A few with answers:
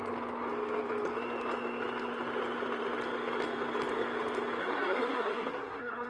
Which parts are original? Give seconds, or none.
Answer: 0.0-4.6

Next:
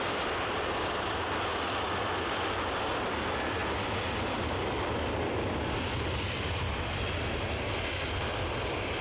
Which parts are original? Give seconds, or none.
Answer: 0.0-9.0

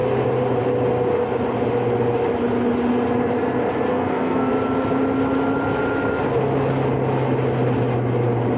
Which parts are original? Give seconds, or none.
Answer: 0.0-3.9; 4.5-8.6

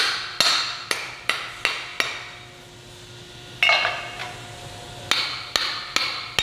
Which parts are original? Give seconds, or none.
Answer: 0.0-6.4